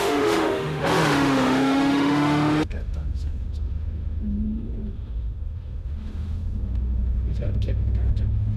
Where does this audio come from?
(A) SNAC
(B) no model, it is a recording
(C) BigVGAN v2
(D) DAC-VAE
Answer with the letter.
D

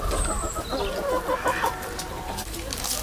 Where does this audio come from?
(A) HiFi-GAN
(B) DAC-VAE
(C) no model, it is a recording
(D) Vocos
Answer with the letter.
C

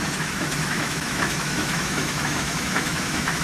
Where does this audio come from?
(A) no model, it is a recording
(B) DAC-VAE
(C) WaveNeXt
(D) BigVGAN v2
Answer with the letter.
B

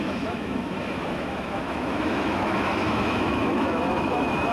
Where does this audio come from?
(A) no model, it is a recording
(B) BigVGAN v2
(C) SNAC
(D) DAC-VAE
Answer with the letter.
D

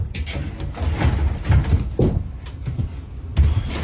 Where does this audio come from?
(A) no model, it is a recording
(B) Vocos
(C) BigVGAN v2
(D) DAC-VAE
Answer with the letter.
A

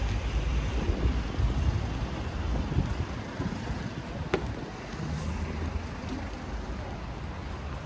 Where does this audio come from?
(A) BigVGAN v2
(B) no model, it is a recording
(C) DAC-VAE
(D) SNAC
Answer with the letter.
B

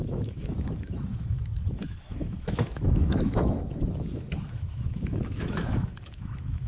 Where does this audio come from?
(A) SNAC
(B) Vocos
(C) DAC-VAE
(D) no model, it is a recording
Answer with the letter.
C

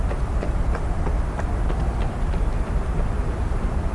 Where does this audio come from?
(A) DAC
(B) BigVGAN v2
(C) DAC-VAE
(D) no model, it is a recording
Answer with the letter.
D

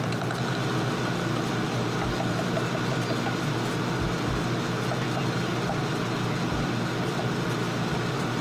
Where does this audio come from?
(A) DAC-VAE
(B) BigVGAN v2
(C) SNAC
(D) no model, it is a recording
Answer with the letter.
D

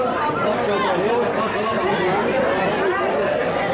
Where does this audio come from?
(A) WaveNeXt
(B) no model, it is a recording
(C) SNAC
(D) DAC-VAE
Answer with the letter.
B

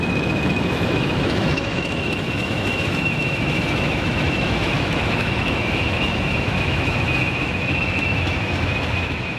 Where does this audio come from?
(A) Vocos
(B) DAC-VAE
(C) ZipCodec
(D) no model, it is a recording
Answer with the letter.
B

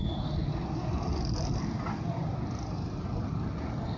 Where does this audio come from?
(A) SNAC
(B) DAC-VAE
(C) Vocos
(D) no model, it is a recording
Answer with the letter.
D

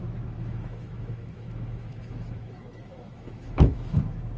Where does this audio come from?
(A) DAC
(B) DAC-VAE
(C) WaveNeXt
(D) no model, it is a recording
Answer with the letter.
B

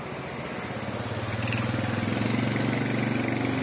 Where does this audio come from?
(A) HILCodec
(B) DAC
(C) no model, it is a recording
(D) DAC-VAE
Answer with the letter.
C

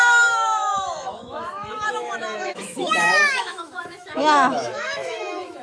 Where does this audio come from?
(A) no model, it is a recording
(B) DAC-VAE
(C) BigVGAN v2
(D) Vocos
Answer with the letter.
B